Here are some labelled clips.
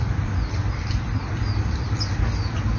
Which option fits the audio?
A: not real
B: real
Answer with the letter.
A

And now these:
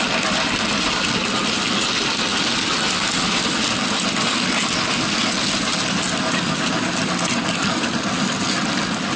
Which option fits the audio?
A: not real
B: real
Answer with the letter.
B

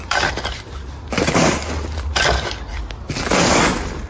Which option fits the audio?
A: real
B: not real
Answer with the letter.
A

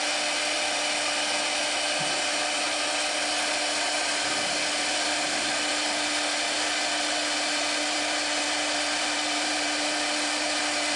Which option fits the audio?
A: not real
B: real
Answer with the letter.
B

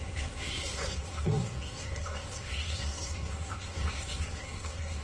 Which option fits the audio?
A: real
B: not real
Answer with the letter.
B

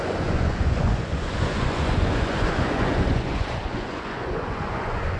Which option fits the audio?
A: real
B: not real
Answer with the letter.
B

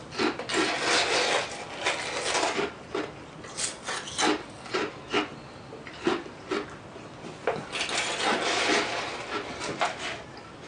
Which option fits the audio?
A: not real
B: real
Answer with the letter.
B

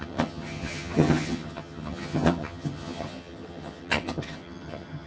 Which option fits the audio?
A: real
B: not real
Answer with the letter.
B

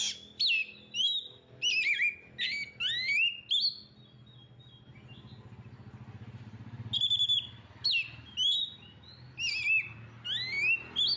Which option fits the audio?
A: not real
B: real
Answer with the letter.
B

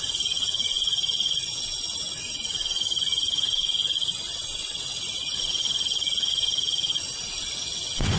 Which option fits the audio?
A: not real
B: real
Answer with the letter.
A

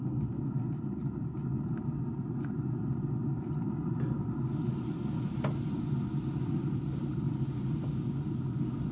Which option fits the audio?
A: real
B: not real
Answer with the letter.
A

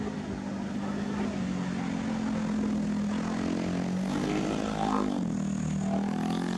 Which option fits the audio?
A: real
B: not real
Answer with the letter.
A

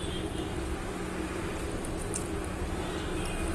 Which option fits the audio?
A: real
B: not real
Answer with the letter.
A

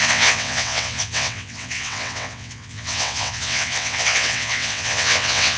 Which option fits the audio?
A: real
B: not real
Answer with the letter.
B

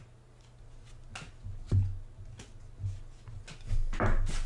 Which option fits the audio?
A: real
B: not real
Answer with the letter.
A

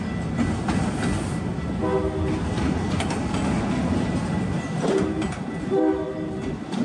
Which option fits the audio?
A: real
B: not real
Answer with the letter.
A